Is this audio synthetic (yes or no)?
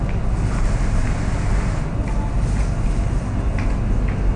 no